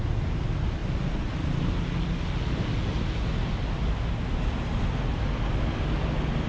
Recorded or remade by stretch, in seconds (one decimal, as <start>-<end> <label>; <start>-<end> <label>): 0.0-6.5 recorded